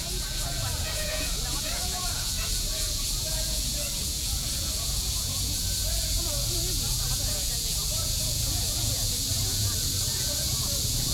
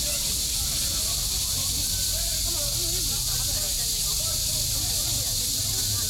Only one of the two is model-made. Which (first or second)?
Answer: first